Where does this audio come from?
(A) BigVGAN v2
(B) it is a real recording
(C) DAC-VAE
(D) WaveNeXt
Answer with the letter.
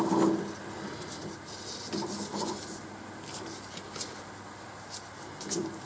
B